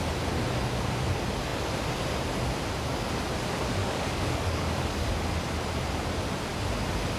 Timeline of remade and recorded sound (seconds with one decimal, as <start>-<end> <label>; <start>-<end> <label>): 0.0-3.8 recorded; 3.8-5.1 remade; 5.1-7.2 recorded